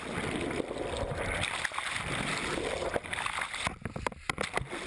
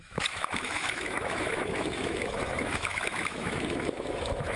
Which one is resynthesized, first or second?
second